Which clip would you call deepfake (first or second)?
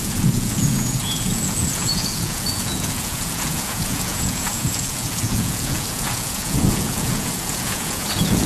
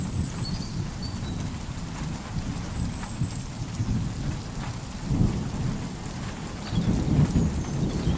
first